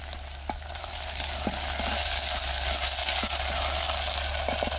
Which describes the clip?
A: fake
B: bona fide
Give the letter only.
B